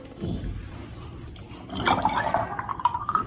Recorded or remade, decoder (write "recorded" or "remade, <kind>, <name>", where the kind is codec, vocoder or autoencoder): recorded